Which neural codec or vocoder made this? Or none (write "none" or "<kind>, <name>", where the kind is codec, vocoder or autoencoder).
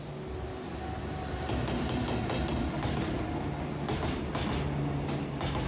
none